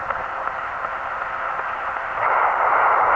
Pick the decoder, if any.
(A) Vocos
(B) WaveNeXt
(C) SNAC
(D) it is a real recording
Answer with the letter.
D